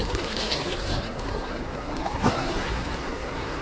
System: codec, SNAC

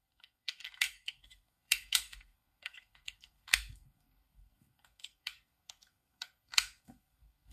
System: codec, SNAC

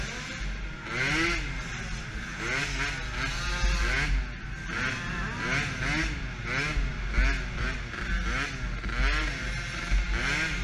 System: none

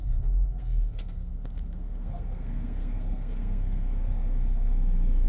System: codec, SNAC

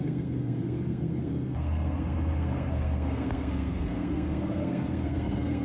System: codec, SNAC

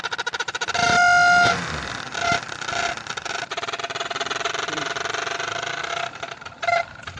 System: none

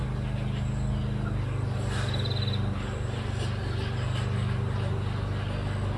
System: none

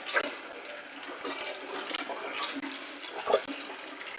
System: none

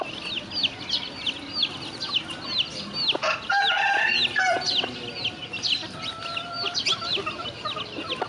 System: none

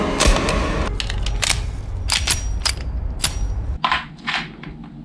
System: none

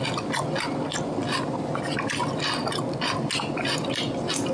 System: none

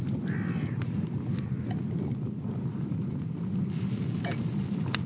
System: none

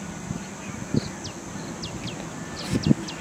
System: none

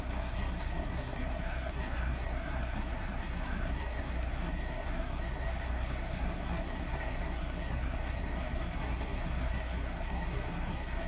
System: codec, SNAC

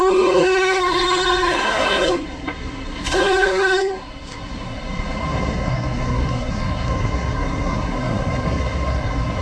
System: codec, SNAC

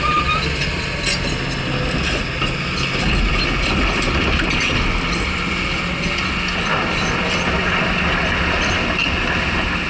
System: none